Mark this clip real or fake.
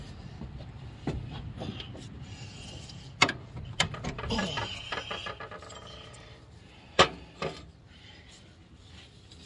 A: fake